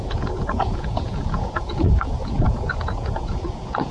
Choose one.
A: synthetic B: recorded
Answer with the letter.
A